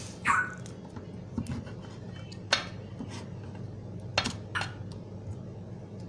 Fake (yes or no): no